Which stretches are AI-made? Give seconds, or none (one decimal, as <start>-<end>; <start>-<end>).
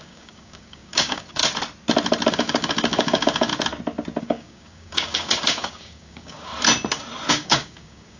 0.0-1.4; 2.3-3.5; 4.2-6.5; 7.3-8.2